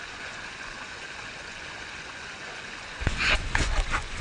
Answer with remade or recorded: remade